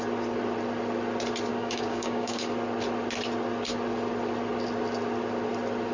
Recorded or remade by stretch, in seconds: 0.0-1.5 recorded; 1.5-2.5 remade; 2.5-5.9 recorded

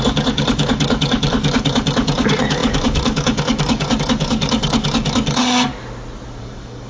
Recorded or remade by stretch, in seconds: 0.0-5.7 remade; 5.7-6.4 recorded; 6.4-6.9 remade

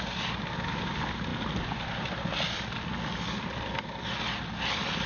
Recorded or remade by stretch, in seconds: 0.0-5.1 recorded

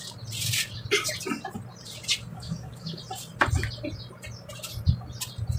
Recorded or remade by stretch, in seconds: 0.0-2.3 recorded; 2.3-3.0 remade; 3.0-5.6 recorded

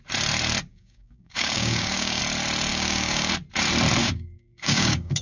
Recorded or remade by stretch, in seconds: 0.0-0.7 recorded; 0.7-2.2 remade; 2.2-2.7 recorded; 2.7-3.3 remade; 3.3-4.0 recorded; 4.0-5.2 remade